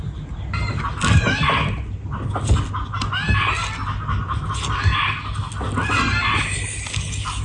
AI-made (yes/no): no